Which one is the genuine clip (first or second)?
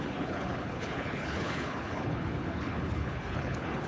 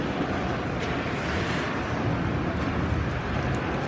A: second